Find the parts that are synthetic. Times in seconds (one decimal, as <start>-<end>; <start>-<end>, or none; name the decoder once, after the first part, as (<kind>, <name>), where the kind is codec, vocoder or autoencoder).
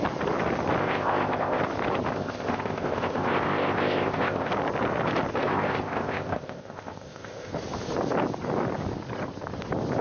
0.8-1.6 (codec, ZipCodec); 2.1-4.5; 5.4-7.5